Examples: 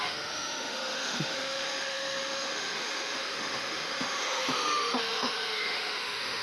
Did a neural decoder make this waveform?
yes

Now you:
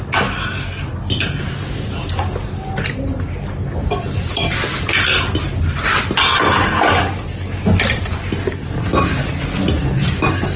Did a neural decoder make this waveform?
no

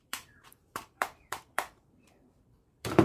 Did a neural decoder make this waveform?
yes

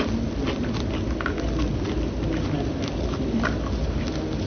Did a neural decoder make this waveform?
no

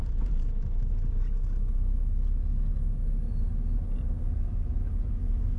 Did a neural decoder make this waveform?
no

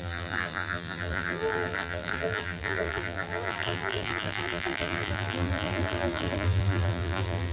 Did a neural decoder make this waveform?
yes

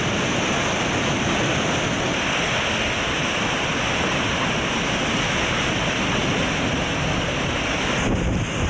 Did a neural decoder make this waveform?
no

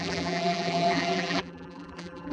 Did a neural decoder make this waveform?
yes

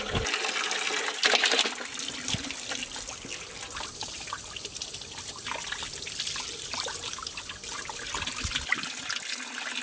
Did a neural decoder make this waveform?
no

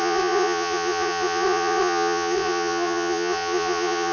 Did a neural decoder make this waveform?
yes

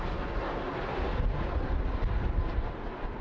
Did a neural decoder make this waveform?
no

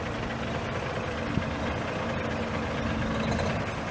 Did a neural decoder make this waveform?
no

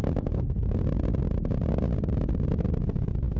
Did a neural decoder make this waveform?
yes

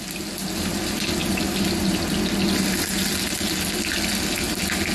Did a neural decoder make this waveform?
no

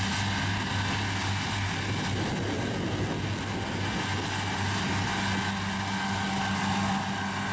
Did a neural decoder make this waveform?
no